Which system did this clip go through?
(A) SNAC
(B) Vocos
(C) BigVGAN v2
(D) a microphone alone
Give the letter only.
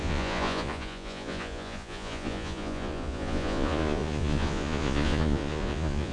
B